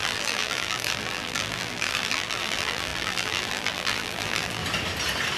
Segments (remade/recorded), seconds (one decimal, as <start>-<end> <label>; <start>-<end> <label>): 0.0-4.6 remade; 4.6-5.4 recorded